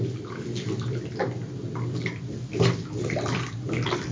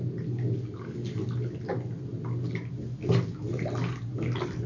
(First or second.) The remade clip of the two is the first